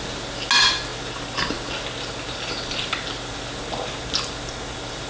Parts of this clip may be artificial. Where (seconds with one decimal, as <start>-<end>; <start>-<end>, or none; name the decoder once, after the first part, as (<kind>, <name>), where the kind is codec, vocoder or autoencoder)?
none